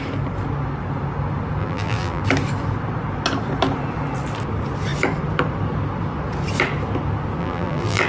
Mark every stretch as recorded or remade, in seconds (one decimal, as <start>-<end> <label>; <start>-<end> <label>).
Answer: 0.0-1.6 recorded; 1.6-2.2 remade; 2.2-7.4 recorded; 7.4-8.1 remade